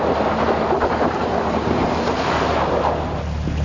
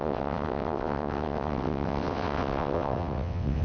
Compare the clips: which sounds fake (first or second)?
second